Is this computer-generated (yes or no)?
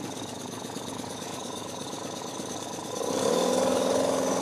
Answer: yes